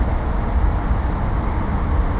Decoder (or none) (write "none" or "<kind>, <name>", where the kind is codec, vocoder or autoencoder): none